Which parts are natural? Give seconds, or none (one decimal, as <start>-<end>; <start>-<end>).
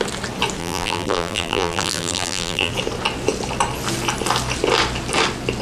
0.0-0.6; 2.7-5.6